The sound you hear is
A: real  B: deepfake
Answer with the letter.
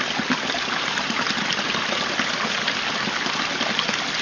A